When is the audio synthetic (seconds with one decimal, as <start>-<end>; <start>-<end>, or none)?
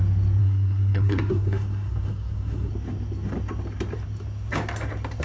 0.4-2.7